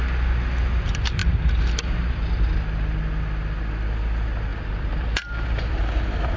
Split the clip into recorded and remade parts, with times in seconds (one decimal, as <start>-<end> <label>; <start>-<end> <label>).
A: 0.0-4.5 recorded; 4.5-6.4 remade